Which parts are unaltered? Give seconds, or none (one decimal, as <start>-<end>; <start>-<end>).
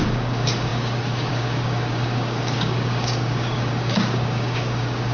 none